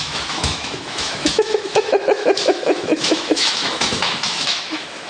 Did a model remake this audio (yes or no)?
yes